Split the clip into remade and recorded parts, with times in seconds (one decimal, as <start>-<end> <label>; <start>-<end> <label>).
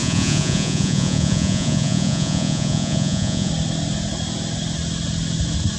0.0-3.5 remade; 3.5-5.8 recorded